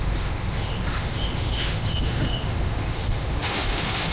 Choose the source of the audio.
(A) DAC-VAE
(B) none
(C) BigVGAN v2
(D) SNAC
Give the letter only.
A